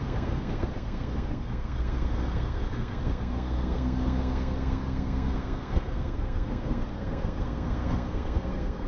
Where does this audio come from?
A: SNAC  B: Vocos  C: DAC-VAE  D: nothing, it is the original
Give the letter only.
A